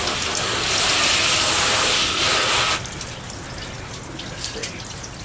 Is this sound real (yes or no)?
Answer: yes